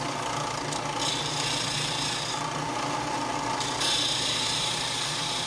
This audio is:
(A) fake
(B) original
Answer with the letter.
B